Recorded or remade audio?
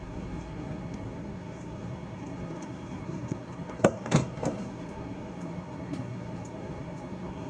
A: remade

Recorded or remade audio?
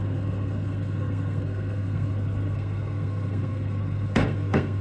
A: remade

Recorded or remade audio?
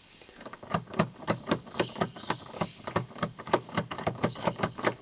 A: remade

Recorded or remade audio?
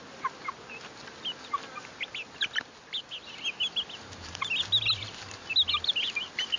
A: recorded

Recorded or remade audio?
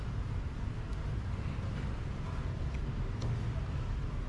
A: recorded